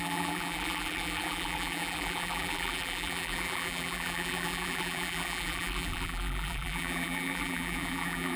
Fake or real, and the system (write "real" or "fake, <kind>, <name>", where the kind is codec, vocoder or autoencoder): fake, vocoder, BigVGAN v2